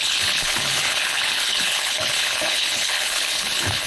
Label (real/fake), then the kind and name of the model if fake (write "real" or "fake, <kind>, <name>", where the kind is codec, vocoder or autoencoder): fake, codec, HILCodec